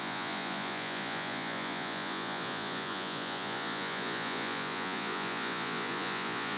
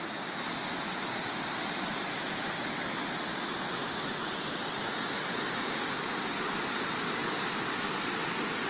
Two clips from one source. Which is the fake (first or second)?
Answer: first